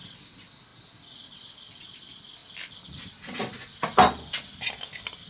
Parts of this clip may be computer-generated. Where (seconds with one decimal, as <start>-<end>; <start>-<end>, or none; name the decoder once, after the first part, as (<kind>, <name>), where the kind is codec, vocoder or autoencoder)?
none